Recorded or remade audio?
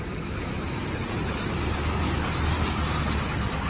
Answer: recorded